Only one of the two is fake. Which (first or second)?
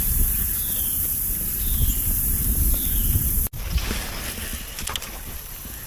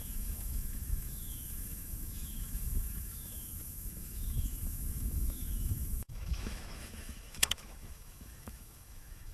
second